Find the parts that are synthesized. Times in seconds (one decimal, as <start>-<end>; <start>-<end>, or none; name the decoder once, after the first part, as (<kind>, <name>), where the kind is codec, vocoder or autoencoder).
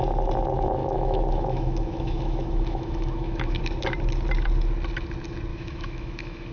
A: 0.8-3.6 (autoencoder, DAC-VAE); 5.5-6.5